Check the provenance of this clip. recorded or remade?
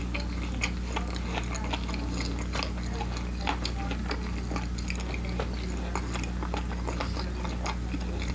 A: recorded